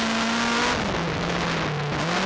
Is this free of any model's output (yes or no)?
yes